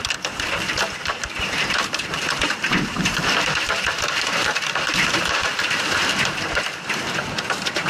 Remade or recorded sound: remade